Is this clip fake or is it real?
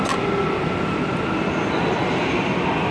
real